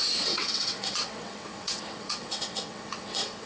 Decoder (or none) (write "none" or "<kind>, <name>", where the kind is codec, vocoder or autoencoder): vocoder, WaveNeXt